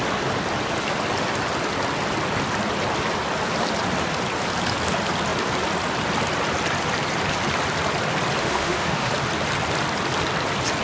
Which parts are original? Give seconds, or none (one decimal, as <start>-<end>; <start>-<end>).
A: 0.0-8.4; 9.1-10.8